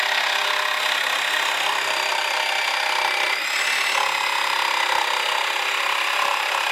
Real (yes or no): yes